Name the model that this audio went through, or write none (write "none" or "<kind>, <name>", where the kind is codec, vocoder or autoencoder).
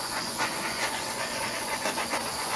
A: vocoder, Vocos